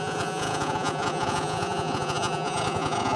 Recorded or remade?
remade